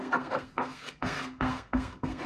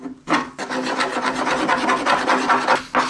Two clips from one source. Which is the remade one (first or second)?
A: first